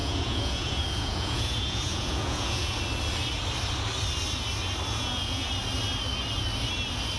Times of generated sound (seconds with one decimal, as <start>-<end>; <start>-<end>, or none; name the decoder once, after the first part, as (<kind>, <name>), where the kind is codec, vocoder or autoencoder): 0.0-2.8 (vocoder, Vocos); 4.9-5.5